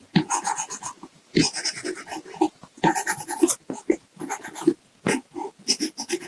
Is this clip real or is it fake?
fake